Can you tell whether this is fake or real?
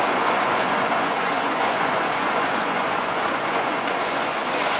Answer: fake